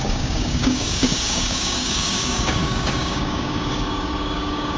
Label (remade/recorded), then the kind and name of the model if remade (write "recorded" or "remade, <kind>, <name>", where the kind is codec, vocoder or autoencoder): remade, codec, DAC